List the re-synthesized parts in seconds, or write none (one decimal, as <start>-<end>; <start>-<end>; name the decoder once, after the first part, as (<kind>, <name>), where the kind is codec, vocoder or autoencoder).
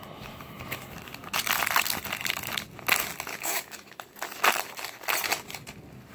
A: 3.3-4.0 (autoencoder, DAC-VAE)